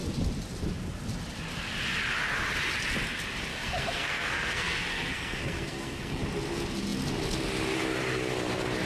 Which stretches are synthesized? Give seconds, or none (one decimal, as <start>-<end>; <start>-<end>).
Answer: 3.5-6.2